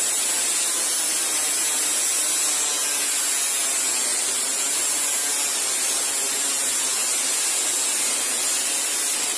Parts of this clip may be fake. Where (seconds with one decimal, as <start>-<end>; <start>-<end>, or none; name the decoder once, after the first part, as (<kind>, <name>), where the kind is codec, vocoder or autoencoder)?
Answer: none